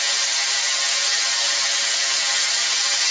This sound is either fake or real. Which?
real